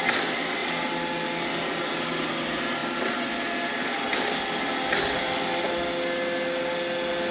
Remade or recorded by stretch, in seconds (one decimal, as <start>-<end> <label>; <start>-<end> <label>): 0.0-7.3 recorded